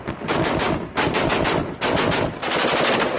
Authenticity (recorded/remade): recorded